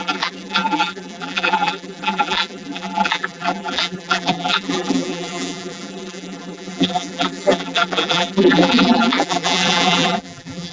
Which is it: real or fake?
fake